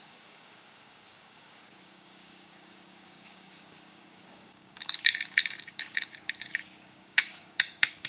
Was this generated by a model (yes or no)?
yes